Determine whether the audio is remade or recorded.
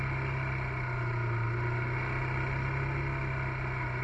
recorded